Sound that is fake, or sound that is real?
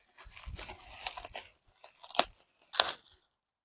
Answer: real